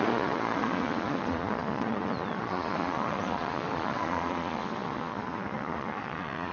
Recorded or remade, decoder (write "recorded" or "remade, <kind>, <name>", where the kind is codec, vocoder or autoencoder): remade, vocoder, Vocos